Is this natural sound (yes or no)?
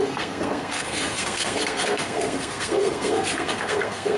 no